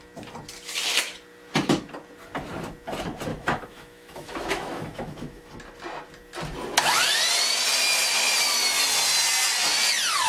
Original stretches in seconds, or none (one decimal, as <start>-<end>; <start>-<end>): 0.0-3.3; 5.5-10.3